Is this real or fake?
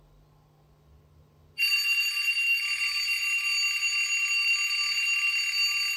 real